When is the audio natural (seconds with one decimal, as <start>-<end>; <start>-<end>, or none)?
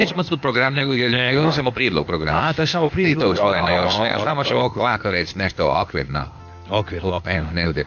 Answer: 6.4-7.0